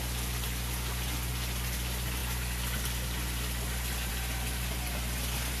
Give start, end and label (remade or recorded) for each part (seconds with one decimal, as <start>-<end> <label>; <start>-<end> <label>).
0.0-5.6 recorded